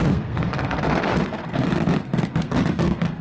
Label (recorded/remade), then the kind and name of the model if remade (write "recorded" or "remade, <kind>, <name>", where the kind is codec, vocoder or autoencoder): remade, codec, SNAC